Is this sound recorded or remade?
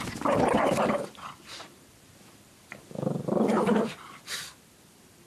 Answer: remade